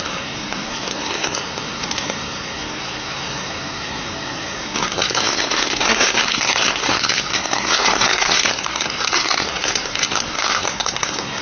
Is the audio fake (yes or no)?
yes